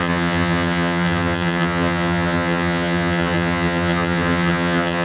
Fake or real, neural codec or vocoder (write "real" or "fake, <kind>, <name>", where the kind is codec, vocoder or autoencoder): fake, vocoder, HiFi-GAN